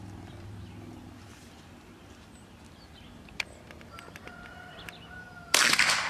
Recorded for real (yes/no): no